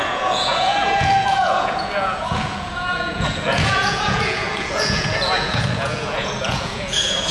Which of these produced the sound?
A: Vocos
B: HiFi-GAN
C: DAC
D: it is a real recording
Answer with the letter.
A